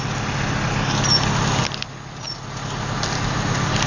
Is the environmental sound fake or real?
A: real